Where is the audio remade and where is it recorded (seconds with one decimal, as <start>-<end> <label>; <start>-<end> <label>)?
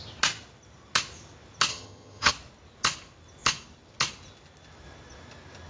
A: 0.0-1.7 recorded; 1.7-2.3 remade; 2.3-5.7 recorded